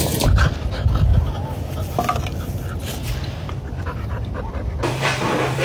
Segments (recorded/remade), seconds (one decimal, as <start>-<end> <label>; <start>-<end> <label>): 0.0-1.1 remade; 1.1-4.5 recorded; 4.5-5.6 remade